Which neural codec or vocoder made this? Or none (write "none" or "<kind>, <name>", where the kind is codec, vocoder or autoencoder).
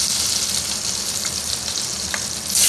none